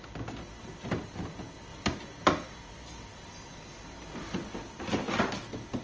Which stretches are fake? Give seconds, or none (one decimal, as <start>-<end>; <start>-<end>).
none